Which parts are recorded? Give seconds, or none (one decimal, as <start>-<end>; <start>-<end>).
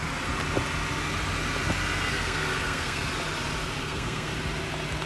0.0-2.1; 3.1-3.8; 4.3-5.1